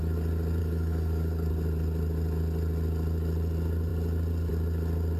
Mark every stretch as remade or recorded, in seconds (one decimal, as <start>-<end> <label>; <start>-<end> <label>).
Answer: 0.0-0.6 recorded; 0.6-1.5 remade; 1.5-5.2 recorded